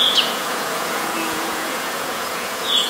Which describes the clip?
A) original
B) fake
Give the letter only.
B